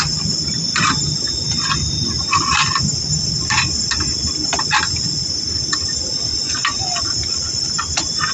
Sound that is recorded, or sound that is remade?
recorded